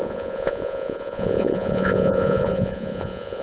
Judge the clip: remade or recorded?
remade